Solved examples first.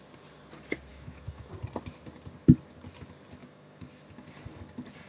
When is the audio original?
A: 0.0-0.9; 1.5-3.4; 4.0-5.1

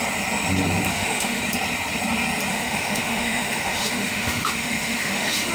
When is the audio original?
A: 0.0-0.9; 1.4-2.5

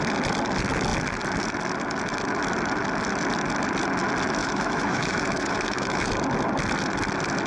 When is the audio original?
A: 0.0-4.4; 6.1-7.5

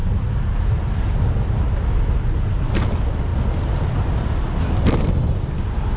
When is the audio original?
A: 0.0-6.0

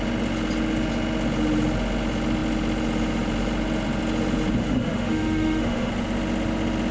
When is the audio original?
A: 0.0-4.6; 5.9-6.9

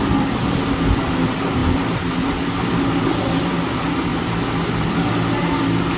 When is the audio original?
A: 0.0-6.0

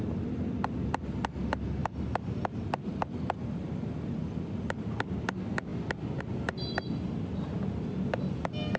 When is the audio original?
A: 0.0-8.8

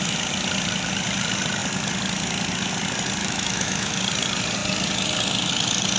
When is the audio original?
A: 0.0-3.2; 4.0-6.0